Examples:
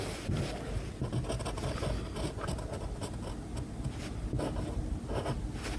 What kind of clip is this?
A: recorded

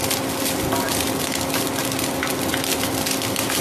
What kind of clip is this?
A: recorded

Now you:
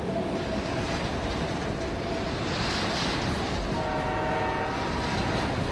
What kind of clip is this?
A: recorded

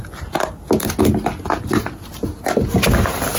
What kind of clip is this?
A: recorded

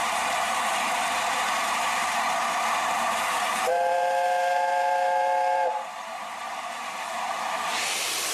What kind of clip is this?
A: remade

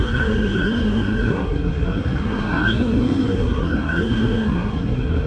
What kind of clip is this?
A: remade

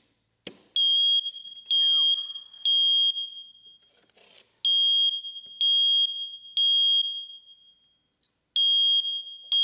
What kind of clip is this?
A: recorded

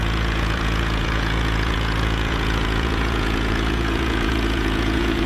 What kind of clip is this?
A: remade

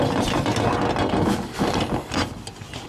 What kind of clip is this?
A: recorded